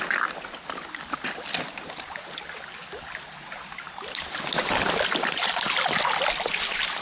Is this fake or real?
real